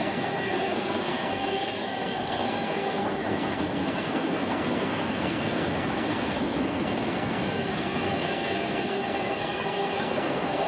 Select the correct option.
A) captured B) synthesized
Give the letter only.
B